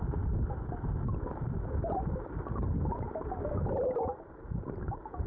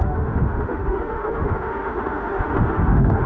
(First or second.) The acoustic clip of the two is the first